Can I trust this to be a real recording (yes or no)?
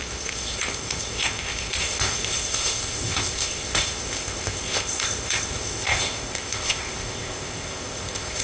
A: no